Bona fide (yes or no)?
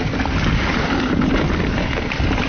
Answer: yes